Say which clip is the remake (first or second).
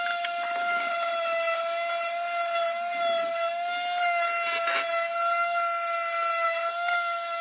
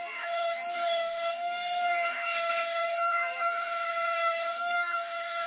second